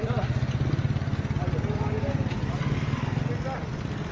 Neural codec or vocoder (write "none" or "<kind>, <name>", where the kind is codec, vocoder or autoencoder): none